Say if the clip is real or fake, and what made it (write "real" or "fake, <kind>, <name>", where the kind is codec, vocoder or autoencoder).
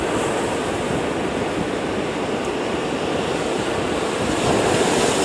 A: real